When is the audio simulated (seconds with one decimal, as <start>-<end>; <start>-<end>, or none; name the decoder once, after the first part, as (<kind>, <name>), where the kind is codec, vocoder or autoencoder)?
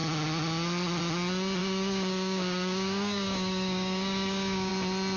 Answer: 1.6-4.7 (codec, DAC)